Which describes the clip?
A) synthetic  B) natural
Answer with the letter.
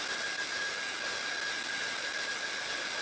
B